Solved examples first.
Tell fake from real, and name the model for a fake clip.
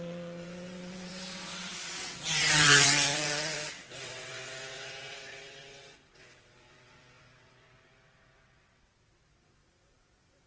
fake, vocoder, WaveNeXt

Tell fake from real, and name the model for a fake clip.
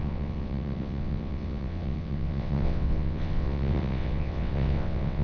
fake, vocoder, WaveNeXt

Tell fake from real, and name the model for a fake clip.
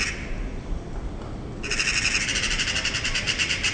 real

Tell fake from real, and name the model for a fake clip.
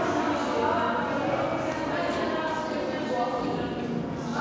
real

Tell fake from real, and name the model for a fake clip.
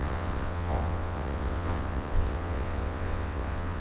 fake, vocoder, WaveNeXt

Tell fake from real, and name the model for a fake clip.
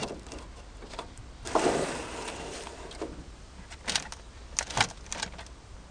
real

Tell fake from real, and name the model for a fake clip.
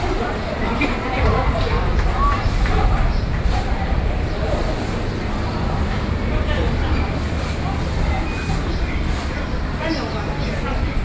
real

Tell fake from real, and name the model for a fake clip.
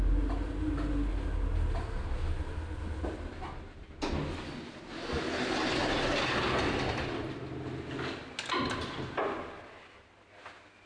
real